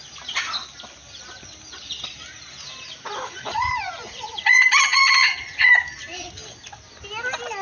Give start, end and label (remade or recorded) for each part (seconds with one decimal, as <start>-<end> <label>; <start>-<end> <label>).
0.0-3.1 recorded; 3.1-5.7 remade; 5.7-7.6 recorded